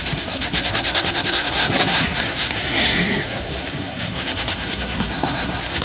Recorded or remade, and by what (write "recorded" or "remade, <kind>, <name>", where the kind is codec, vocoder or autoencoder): remade, codec, SNAC